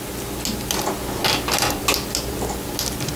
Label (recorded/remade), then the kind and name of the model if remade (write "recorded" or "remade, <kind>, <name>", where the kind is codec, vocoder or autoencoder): recorded